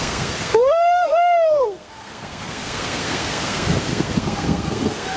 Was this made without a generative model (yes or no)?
no